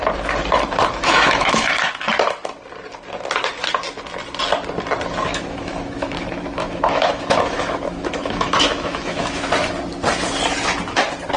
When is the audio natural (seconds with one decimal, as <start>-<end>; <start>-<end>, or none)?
0.0-1.0; 1.9-5.3; 9.5-11.4